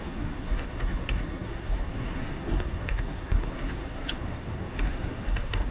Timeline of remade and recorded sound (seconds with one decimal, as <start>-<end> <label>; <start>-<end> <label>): 0.0-5.7 remade